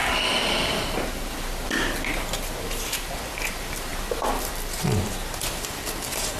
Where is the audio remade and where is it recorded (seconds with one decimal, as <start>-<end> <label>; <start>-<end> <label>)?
0.0-6.4 recorded